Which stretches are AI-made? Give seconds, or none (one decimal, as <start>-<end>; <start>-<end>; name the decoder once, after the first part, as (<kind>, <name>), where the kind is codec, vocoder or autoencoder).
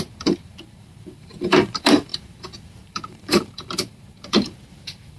0.0-5.2 (vocoder, BigVGAN v2)